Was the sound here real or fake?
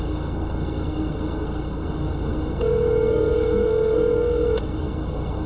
fake